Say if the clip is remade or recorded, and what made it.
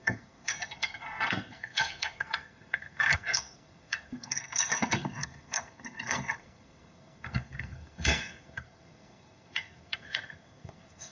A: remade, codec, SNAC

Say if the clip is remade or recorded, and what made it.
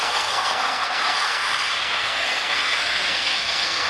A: remade, codec, SNAC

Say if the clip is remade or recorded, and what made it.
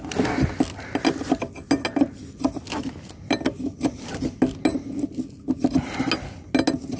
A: recorded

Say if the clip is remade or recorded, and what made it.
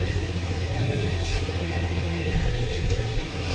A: remade, codec, SNAC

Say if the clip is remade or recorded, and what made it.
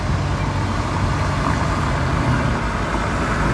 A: recorded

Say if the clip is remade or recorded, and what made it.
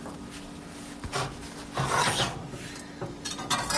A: recorded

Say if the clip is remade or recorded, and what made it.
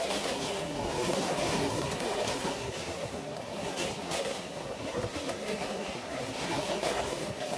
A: remade, codec, SNAC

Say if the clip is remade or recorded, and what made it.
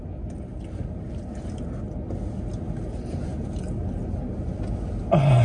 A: recorded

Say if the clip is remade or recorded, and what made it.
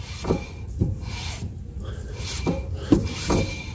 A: recorded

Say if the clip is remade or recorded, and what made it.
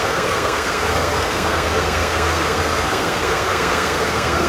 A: remade, codec, SNAC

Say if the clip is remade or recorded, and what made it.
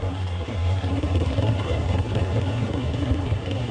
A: remade, codec, SNAC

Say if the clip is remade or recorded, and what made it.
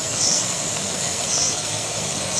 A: remade, codec, SNAC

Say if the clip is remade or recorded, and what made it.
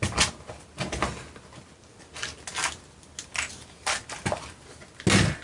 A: recorded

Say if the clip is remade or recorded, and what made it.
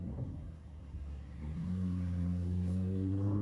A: remade, codec, SNAC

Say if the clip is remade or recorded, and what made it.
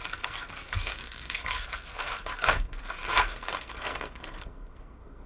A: remade, codec, SNAC